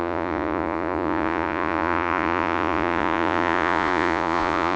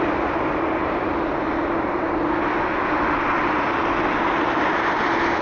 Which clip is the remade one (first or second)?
first